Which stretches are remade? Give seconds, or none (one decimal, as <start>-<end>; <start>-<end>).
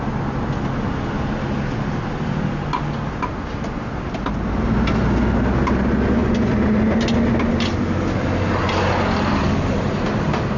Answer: none